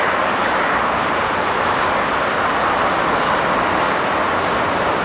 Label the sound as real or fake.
real